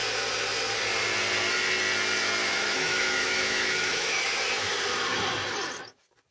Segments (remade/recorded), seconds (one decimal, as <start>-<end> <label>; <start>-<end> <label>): 0.0-2.4 recorded; 2.4-4.3 remade; 4.3-6.3 recorded